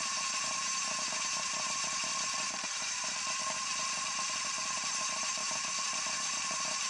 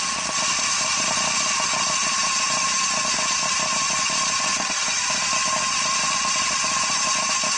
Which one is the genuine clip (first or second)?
second